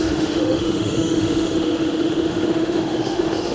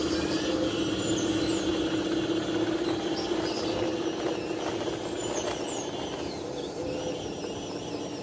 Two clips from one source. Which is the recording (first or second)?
second